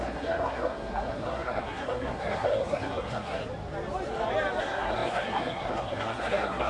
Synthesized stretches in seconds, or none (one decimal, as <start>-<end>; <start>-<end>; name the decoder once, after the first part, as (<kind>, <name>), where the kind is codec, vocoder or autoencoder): 0.0-3.4 (codec, SNAC); 4.6-6.7

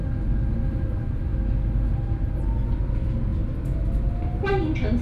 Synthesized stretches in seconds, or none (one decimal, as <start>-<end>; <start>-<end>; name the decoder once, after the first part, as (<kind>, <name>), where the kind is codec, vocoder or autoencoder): none

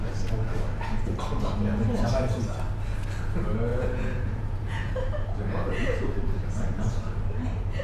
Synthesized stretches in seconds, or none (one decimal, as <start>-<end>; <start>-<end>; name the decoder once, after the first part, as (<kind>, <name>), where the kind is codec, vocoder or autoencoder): 3.7-4.9 (vocoder, Vocos)

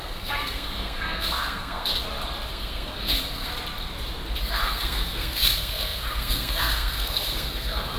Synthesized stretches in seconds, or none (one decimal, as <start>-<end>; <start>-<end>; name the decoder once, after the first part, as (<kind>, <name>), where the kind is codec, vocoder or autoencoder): 0.0-2.0 (codec, SNAC); 2.5-3.5; 4.4-8.0

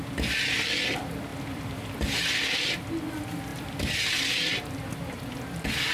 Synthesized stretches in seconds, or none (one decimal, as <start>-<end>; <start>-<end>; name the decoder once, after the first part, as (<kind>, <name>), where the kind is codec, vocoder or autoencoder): 1.3-2.2 (vocoder, BigVGAN v2); 3.5-4.0

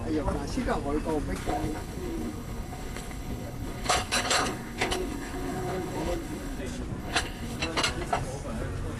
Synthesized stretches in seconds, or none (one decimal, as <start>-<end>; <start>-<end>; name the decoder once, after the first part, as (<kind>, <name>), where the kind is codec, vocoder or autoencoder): 1.4-6.6 (codec, HILCodec); 7.0-7.6

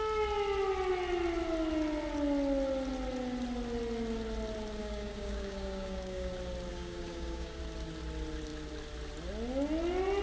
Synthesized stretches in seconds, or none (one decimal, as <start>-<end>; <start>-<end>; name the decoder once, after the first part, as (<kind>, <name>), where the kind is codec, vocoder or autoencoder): 4.8-6.3 (codec, DAC); 6.7-7.6

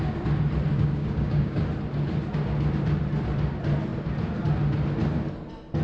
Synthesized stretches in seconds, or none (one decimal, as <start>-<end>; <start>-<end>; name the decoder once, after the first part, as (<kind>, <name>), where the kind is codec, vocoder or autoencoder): 0.7-1.6 (codec, DAC)